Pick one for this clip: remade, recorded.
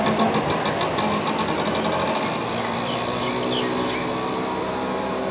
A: recorded